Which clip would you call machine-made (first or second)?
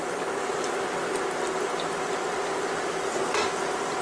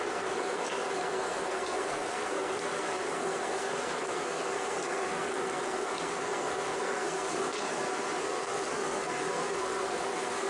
second